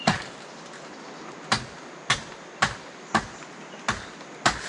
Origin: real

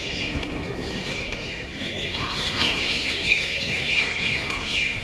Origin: fake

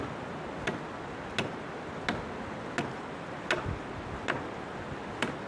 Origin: real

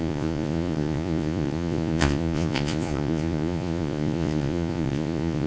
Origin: fake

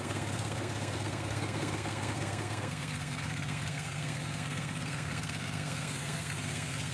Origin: fake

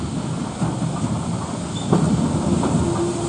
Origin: real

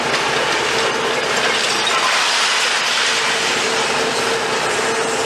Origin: real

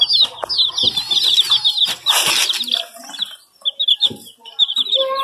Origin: real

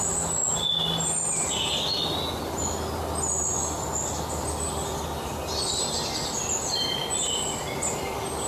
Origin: real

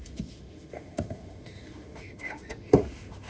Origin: fake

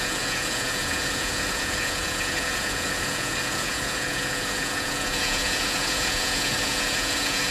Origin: fake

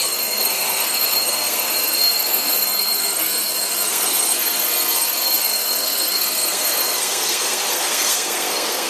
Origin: fake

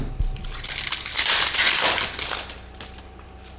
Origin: real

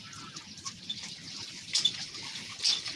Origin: real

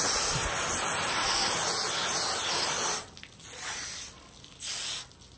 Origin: real